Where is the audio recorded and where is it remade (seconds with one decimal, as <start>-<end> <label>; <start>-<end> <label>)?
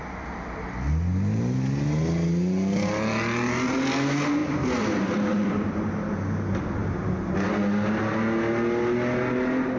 0.0-4.4 recorded; 4.4-5.9 remade; 5.9-9.8 recorded